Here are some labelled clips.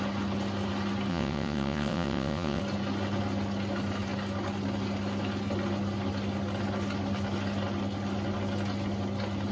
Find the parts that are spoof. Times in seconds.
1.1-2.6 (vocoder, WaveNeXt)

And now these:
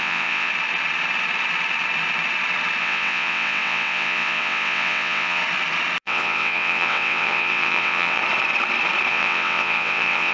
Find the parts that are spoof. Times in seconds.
0.0-0.5 (vocoder, WaveNeXt); 2.8-5.4; 6.0-8.2; 9.1-10.3

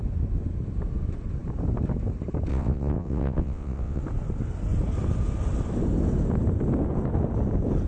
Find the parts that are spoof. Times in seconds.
2.5-4.0 (vocoder, WaveNeXt)

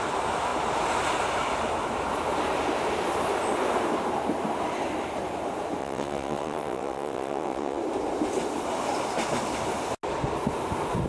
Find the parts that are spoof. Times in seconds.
5.8-7.8 (vocoder, WaveNeXt)

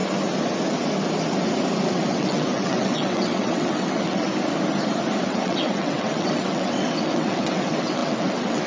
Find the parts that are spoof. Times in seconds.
1.9-4.3 (vocoder, WaveNeXt); 5.2-8.7